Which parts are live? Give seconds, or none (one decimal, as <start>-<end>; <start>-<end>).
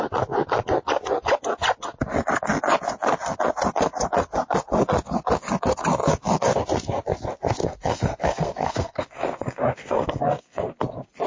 0.0-7.6; 10.7-11.3